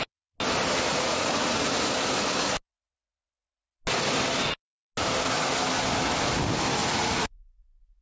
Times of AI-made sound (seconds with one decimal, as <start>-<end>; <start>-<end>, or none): 0.9-1.7; 6.8-8.0